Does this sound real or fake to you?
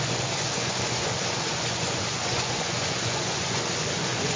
fake